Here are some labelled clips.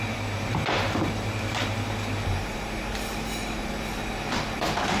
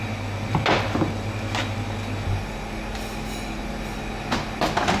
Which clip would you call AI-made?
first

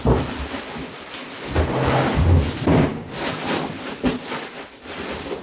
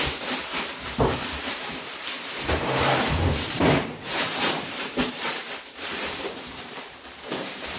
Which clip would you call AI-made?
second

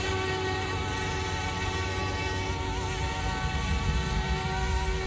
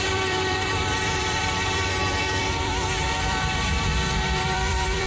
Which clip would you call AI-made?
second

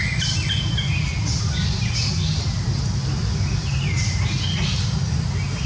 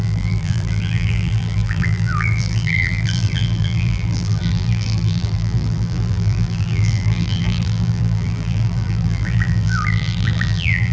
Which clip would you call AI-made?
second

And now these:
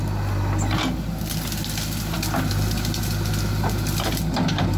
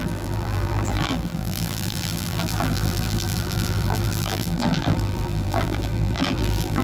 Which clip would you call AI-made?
second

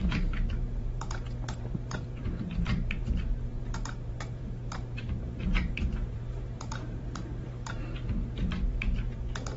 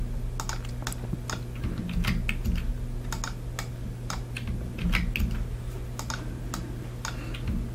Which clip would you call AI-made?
first